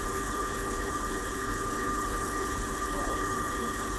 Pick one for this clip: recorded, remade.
remade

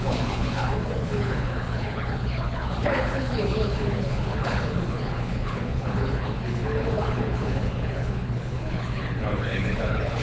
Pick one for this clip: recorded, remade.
remade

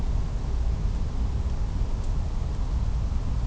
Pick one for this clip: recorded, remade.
recorded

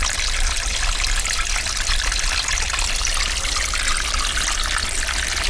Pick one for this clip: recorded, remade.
recorded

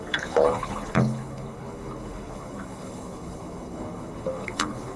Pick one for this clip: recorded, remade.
remade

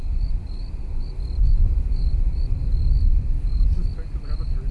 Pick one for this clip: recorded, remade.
recorded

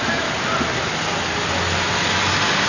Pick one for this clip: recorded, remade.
recorded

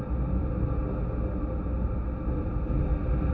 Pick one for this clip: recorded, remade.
recorded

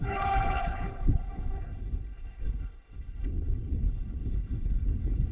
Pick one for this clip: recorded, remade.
remade